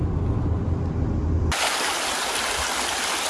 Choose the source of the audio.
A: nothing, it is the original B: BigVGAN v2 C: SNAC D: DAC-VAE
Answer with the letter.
A